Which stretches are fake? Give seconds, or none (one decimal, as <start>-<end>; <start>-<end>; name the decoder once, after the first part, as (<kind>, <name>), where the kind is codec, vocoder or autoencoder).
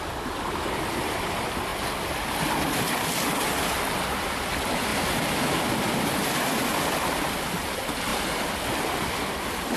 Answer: 0.0-1.7 (vocoder, BigVGAN v2); 4.2-8.1; 9.0-9.8